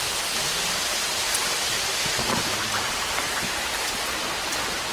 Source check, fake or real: real